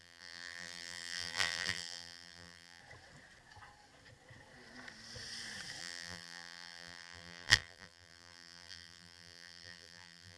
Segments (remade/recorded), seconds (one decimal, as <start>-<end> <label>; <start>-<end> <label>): 0.0-2.8 remade; 2.8-5.8 recorded; 5.8-10.4 remade